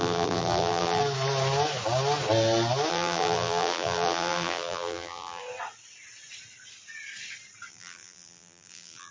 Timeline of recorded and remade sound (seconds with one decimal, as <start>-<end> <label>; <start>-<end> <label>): 0.0-1.0 remade; 1.0-2.9 recorded; 2.9-5.4 remade; 5.4-7.7 recorded; 7.7-9.1 remade